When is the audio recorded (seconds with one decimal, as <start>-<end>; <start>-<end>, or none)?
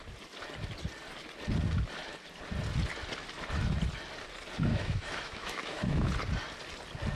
0.0-4.7; 6.1-7.1